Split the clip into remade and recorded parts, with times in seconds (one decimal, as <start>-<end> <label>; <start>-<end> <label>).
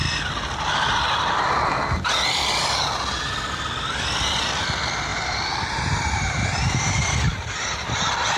0.0-5.1 recorded; 5.1-8.0 remade; 8.0-8.4 recorded